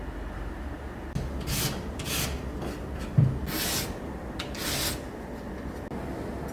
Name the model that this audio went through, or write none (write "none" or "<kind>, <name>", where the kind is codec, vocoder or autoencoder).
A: none